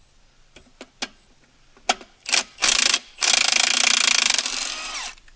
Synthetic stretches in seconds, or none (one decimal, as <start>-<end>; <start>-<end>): 2.6-3.3